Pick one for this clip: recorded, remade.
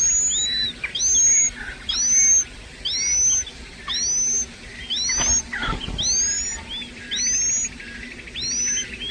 recorded